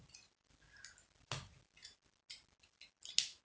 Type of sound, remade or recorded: recorded